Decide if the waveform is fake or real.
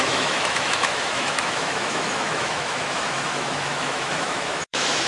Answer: fake